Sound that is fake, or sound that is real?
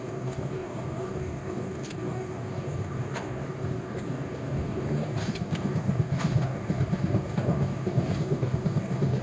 fake